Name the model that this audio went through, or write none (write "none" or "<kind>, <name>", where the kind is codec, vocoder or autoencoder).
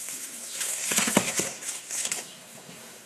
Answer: codec, SNAC